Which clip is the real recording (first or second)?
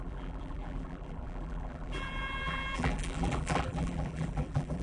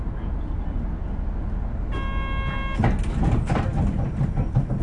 second